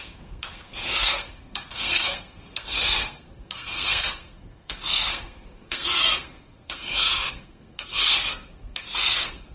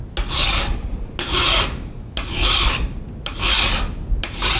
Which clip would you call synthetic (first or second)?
first